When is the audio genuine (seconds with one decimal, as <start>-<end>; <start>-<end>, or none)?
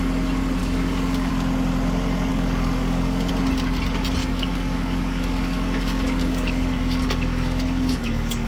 0.0-0.6; 1.3-2.3; 3.3-4.2